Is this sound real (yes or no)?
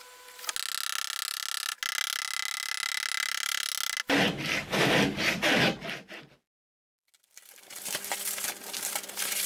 yes